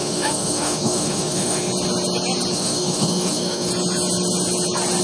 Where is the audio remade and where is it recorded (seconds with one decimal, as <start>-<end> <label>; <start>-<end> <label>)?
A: 0.0-1.7 remade; 1.7-2.5 recorded; 2.5-3.7 remade; 3.7-5.0 recorded